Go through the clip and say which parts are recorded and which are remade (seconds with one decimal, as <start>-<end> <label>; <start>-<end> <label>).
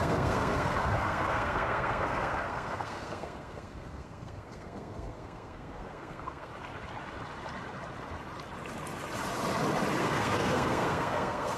0.0-6.5 remade; 6.5-10.0 recorded; 10.0-11.6 remade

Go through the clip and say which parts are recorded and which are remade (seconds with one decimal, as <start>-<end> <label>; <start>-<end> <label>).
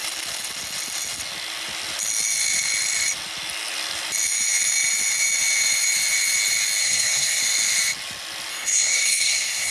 0.0-6.8 recorded; 6.8-7.4 remade; 7.4-8.5 recorded; 8.5-9.7 remade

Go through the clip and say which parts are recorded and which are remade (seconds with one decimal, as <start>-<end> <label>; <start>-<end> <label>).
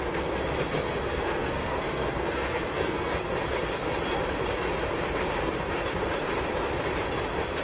0.0-0.6 recorded; 0.6-3.3 remade; 3.3-7.6 recorded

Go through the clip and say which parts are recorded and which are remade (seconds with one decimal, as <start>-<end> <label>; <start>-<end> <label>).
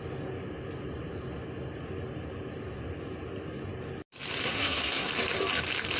0.0-4.4 recorded; 4.4-5.1 remade; 5.1-6.0 recorded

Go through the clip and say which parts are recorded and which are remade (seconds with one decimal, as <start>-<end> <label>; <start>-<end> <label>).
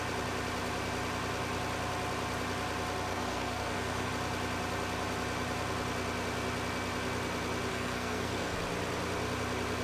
0.0-3.1 recorded; 3.1-4.1 remade; 4.1-7.7 recorded; 7.7-8.6 remade; 8.6-9.8 recorded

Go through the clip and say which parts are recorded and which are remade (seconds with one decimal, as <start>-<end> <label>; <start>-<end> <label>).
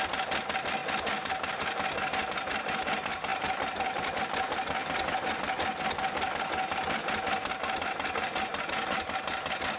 0.0-9.8 recorded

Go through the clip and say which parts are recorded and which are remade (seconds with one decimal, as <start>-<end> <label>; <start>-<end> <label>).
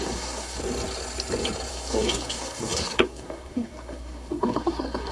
0.0-0.6 remade; 0.6-1.7 recorded; 1.7-5.1 remade